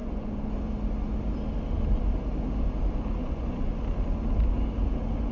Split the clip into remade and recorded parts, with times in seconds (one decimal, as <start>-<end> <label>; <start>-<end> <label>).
0.0-0.7 remade; 0.7-3.2 recorded; 3.2-3.7 remade; 3.7-5.3 recorded